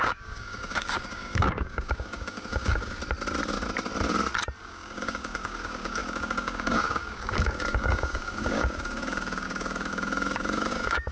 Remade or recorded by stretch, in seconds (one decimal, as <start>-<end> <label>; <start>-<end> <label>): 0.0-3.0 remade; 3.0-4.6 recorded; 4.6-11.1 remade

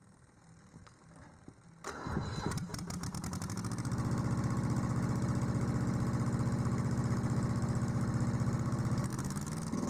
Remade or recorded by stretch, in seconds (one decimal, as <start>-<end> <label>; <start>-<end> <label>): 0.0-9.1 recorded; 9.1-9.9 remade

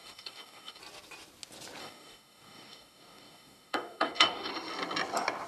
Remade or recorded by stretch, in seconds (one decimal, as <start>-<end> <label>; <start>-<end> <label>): 0.0-0.8 remade; 0.8-1.8 recorded; 1.8-4.5 remade; 4.5-5.5 recorded

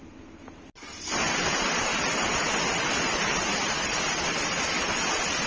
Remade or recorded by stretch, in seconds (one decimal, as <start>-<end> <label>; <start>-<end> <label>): 0.0-5.5 recorded